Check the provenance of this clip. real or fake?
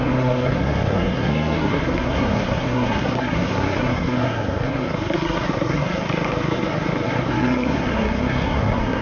fake